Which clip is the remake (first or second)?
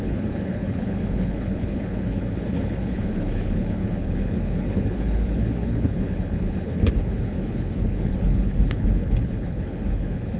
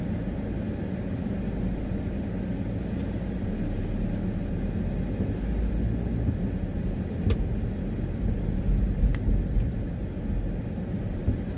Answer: first